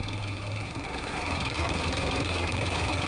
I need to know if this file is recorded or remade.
remade